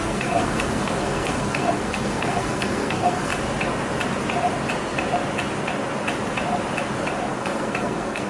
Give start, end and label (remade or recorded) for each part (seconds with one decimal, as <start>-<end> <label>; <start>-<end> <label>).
0.0-3.3 remade; 3.3-7.3 recorded; 7.3-8.3 remade